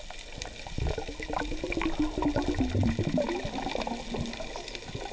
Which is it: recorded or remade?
recorded